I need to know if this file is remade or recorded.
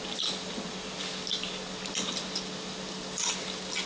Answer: recorded